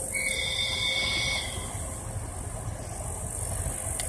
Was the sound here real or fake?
real